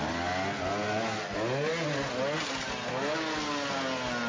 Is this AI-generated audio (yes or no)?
no